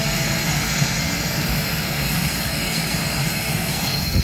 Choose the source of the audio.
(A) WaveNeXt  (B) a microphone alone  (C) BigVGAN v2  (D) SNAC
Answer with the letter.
D